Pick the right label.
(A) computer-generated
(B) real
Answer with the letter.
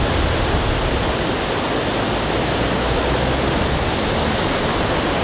B